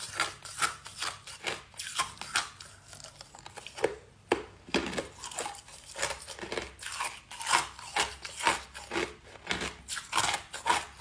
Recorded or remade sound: recorded